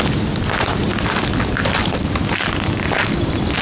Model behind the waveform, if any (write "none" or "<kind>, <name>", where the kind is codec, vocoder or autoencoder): none